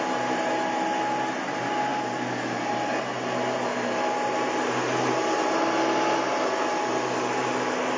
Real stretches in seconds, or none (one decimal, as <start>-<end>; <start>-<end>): 0.0-8.0